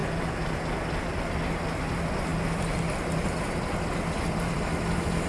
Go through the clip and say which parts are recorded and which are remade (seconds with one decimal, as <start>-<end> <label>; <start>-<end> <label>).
0.0-5.3 recorded